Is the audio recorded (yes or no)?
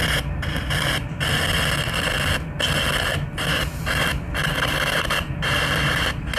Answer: yes